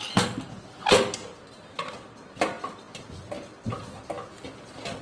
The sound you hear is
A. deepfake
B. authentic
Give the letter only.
B